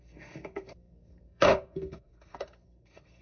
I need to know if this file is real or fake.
fake